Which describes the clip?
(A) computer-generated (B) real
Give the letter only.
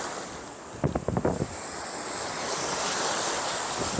B